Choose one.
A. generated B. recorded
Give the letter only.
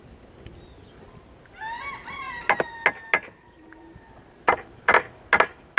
B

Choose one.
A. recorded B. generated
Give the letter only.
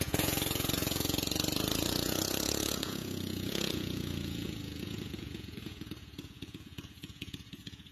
B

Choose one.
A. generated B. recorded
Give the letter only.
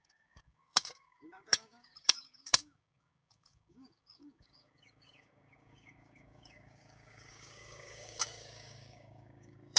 A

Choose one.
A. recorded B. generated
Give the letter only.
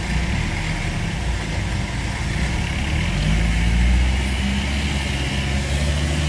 A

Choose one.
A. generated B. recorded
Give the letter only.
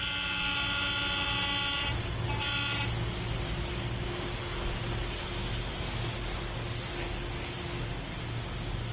B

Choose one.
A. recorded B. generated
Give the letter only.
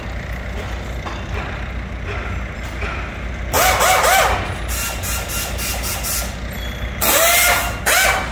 A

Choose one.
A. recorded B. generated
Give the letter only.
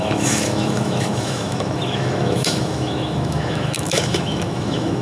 B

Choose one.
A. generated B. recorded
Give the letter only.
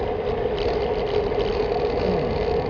B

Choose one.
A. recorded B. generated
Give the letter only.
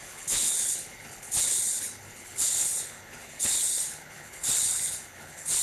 B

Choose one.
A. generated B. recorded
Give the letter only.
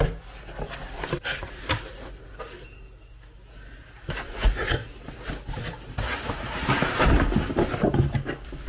B